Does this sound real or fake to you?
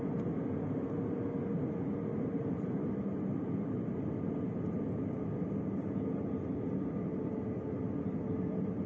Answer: real